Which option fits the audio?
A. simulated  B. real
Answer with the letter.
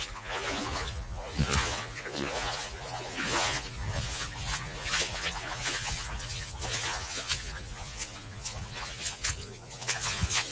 A